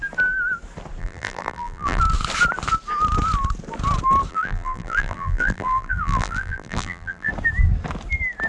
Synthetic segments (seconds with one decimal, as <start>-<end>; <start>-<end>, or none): 1.0-2.0; 4.3-7.3